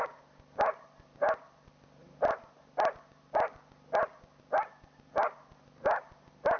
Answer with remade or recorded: recorded